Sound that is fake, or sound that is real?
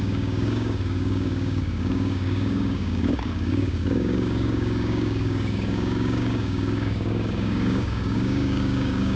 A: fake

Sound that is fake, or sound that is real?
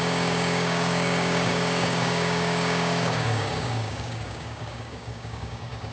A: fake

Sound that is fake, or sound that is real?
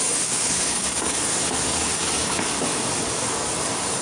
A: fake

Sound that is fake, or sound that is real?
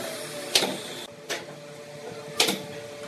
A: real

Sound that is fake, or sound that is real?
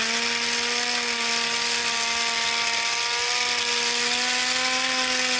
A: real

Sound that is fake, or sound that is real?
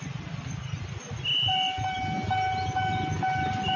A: real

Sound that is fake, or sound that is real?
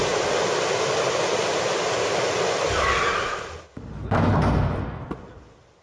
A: real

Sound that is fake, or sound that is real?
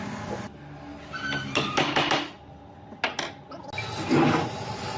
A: real